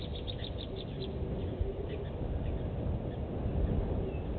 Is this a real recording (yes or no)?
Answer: yes